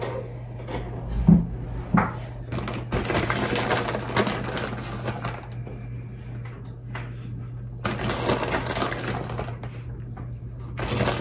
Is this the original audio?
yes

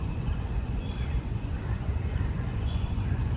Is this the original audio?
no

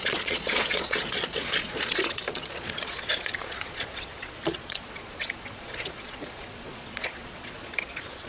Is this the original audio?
no